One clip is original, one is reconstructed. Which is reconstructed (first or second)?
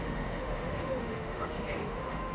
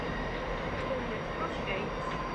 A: first